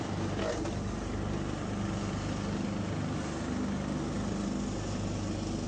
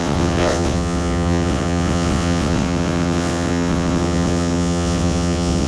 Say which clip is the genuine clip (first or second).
first